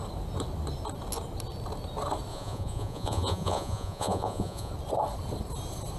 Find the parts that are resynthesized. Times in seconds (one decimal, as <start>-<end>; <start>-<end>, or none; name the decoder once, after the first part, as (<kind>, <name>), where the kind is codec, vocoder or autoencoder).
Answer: 2.3-4.7 (vocoder, Vocos)